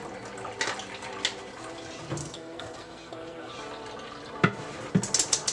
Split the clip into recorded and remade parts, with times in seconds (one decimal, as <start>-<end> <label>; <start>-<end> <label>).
0.0-2.2 recorded; 2.2-3.5 remade; 3.5-5.5 recorded